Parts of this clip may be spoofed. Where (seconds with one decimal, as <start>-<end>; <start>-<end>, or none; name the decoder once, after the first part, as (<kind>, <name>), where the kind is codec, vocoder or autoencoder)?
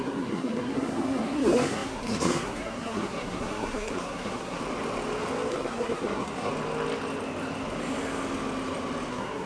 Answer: 0.0-4.6 (codec, SNAC); 5.5-6.5; 9.1-9.5